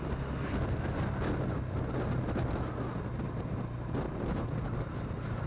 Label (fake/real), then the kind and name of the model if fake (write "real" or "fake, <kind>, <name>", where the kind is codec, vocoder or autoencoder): real